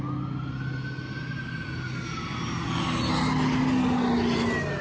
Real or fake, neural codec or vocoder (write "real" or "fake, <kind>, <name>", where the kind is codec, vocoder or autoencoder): real